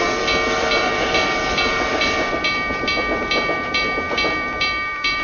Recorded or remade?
remade